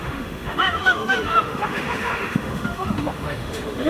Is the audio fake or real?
fake